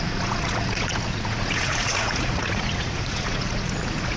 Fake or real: fake